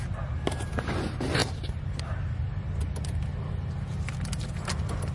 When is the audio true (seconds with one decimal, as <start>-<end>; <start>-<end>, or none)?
0.0-5.1